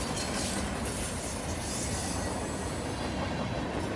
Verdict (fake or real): real